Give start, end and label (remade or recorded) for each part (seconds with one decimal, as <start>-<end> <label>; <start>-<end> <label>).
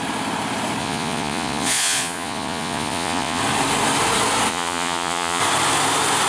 0.0-0.8 recorded; 0.8-3.4 remade; 3.4-4.5 recorded; 4.5-5.4 remade; 5.4-6.3 recorded